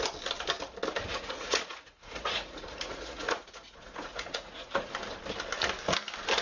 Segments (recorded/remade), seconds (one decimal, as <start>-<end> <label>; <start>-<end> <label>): 0.0-1.1 recorded; 1.1-4.9 remade; 4.9-6.4 recorded